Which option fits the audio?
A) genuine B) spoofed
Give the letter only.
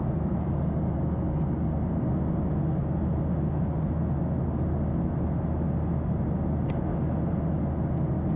A